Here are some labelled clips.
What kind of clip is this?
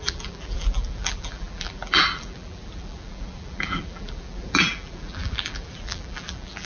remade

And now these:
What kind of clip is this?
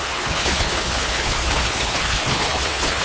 remade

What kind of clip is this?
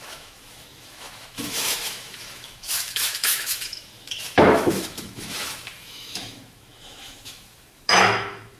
remade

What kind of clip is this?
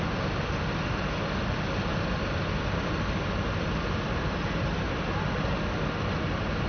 recorded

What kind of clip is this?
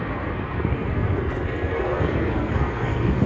remade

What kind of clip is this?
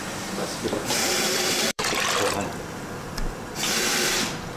remade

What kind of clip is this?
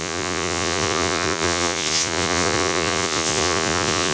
remade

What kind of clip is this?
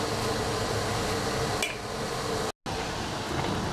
recorded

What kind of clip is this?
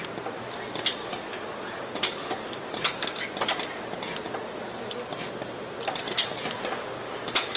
recorded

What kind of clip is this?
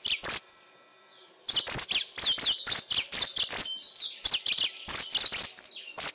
recorded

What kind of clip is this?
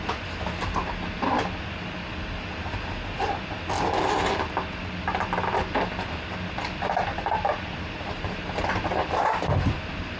recorded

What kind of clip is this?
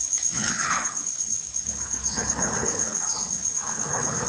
remade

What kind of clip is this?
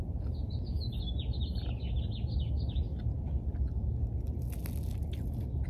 recorded